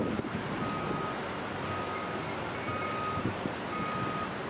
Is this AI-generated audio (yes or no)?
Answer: no